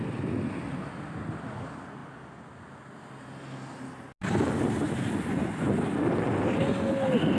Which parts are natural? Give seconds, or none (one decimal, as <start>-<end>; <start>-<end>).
0.0-7.4